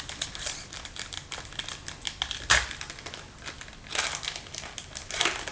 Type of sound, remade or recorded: recorded